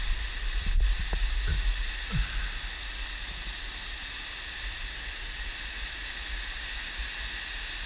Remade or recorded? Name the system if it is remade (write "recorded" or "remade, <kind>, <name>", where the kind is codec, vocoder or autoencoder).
recorded